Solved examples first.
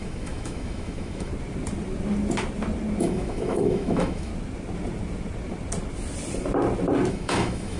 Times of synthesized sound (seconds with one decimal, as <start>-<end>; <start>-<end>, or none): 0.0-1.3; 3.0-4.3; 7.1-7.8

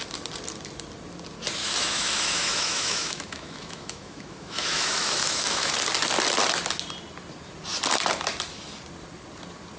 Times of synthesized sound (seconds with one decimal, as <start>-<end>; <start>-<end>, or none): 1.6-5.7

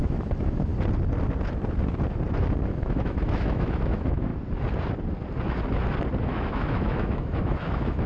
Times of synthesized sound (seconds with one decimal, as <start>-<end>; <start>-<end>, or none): 0.0-0.7; 2.6-4.3; 6.2-8.1